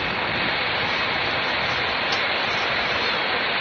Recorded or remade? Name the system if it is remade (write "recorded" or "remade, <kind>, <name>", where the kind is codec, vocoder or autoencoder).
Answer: recorded